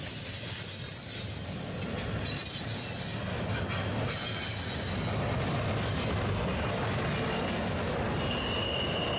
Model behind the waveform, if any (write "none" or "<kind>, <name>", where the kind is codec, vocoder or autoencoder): none